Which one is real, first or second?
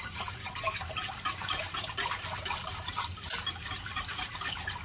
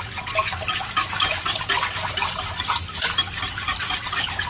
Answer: second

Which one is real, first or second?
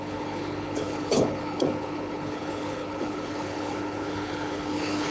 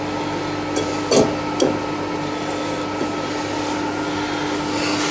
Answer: second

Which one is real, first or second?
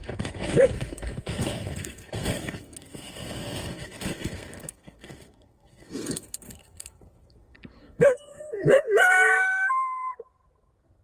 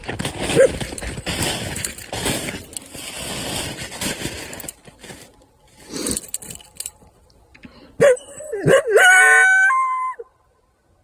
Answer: second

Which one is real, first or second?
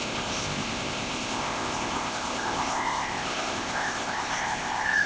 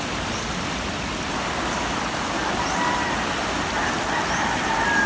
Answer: second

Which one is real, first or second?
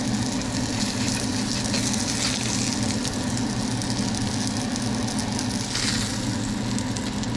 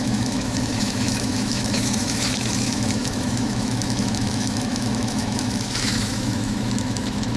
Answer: first